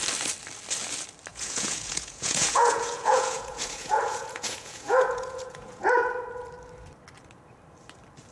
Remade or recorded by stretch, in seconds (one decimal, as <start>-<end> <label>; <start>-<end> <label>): 0.0-1.3 recorded; 1.3-5.9 remade; 5.9-8.3 recorded